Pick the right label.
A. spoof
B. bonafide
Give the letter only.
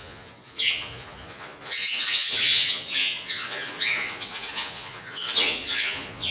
A